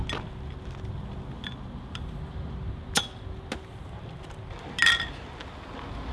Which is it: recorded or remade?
recorded